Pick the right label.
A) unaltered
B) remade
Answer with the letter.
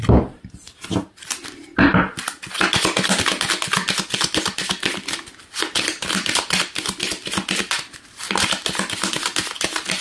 A